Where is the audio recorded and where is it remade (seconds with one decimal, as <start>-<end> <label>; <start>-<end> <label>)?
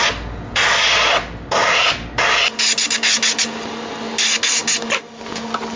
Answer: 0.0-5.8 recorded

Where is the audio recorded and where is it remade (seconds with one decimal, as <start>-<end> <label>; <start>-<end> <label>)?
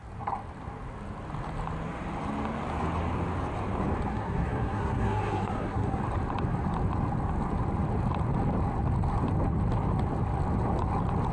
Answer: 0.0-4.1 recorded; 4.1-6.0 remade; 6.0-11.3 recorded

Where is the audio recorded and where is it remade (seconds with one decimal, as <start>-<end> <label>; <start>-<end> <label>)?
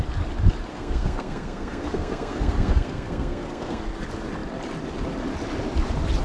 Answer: 0.0-0.7 recorded; 0.7-3.8 remade; 3.8-6.2 recorded